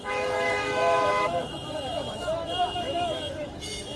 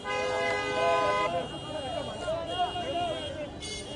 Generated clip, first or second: first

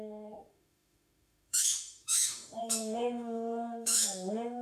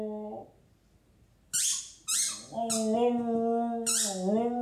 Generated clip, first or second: first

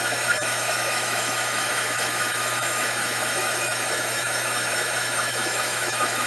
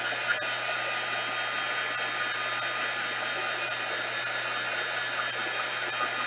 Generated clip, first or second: first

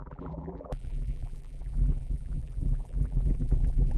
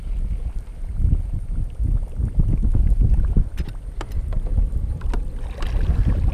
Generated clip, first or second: first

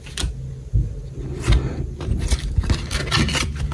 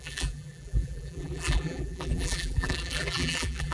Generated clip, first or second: second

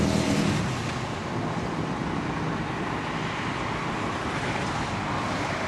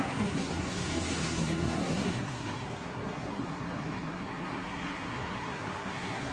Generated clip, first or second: second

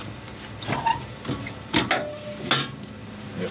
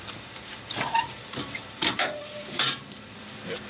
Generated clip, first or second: second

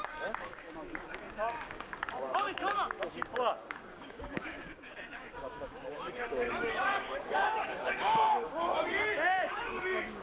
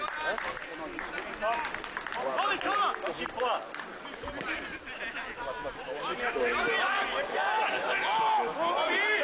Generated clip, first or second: first